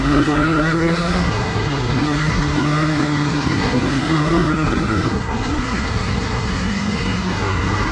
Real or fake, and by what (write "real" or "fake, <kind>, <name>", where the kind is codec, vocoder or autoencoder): fake, codec, SNAC